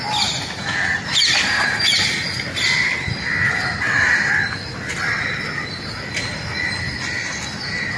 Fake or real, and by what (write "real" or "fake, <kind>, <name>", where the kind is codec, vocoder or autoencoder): real